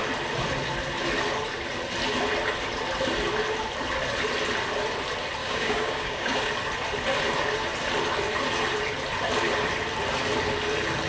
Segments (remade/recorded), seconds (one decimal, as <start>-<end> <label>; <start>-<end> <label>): 0.0-5.4 recorded; 5.4-6.5 remade; 6.5-11.1 recorded